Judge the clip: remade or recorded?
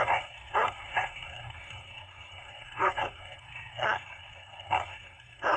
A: remade